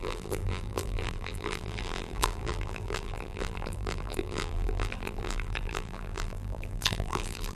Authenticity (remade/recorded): remade